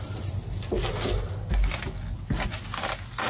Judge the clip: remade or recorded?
recorded